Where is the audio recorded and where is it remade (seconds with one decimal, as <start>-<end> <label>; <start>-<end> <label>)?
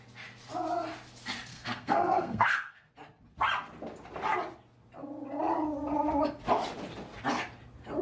0.0-1.5 recorded; 1.5-2.9 remade; 2.9-8.0 recorded